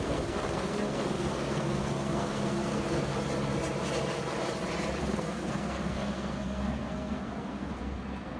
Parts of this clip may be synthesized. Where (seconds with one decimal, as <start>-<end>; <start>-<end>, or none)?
0.0-3.1; 5.0-8.4